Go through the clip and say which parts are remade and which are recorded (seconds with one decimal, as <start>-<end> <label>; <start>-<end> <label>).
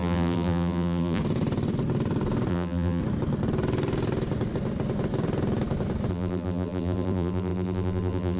0.0-1.2 remade; 1.2-2.5 recorded; 2.5-3.0 remade; 3.0-6.1 recorded; 6.1-8.4 remade